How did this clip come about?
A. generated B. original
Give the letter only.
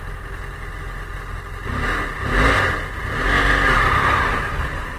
B